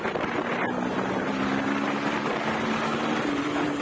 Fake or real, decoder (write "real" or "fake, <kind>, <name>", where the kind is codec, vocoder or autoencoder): real